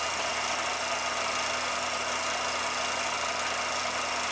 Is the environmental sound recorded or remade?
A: recorded